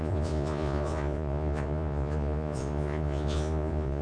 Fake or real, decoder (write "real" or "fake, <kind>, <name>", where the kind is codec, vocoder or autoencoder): fake, vocoder, Vocos